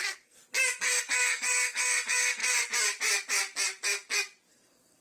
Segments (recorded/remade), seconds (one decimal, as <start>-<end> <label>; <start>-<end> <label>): 0.0-0.4 remade; 0.4-1.0 recorded; 1.0-2.4 remade; 2.4-4.5 recorded; 4.5-5.0 remade